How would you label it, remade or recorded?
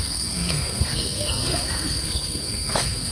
remade